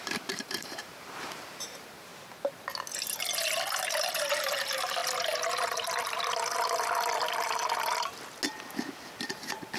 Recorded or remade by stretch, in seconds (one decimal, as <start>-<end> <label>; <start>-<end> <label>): 0.0-2.1 remade; 2.1-4.3 recorded; 4.3-5.0 remade; 5.0-9.8 recorded